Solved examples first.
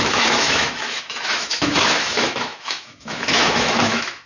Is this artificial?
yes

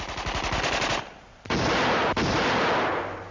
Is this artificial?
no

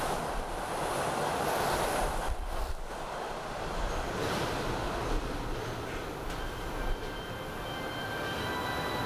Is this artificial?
no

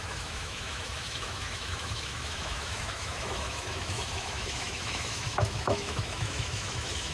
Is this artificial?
yes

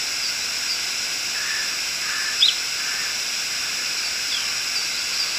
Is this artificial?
no